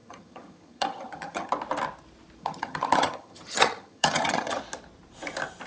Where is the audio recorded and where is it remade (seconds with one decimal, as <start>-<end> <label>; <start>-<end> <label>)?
0.0-1.5 remade; 1.5-2.4 recorded; 2.4-4.6 remade; 4.6-5.7 recorded